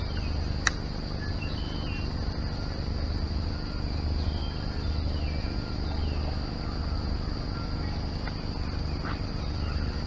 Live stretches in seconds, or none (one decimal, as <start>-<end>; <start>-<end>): 0.0-10.1